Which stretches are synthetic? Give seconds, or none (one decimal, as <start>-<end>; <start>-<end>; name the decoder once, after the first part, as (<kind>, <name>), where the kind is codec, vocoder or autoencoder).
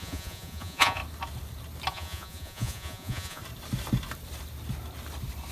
0.0-1.0 (vocoder, Vocos); 1.9-3.4